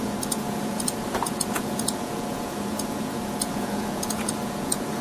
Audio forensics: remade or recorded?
remade